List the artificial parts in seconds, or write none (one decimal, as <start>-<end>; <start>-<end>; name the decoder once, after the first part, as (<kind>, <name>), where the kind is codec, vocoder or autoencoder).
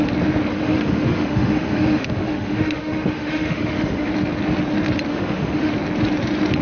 0.5-4.1 (autoencoder, DAC-VAE); 5.1-5.7